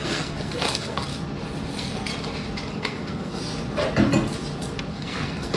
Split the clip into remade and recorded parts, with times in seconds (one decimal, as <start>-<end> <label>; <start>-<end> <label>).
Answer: 0.0-1.1 remade; 1.1-1.7 recorded; 1.7-2.1 remade; 2.1-2.7 recorded; 2.7-3.4 remade; 3.4-4.9 recorded; 4.9-5.6 remade